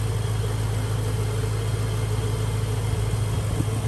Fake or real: real